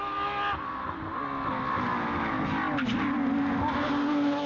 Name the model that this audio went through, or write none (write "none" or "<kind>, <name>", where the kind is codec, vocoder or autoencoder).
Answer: none